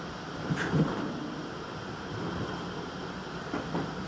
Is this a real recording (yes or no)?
yes